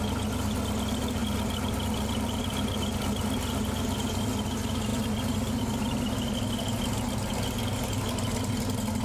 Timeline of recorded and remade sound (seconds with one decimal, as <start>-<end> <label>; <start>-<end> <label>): 0.0-9.0 recorded